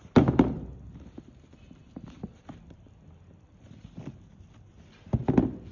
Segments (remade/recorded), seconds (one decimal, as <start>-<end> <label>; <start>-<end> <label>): 0.0-1.8 recorded; 1.8-5.2 remade; 5.2-5.7 recorded